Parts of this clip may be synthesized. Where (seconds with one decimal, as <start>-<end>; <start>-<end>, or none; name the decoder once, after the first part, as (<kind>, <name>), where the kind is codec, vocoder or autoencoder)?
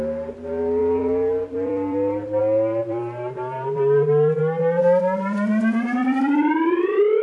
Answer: 0.8-2.4 (vocoder, BigVGAN v2); 2.8-4.4; 6.0-7.2